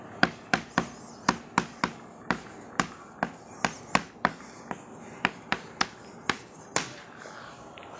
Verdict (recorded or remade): remade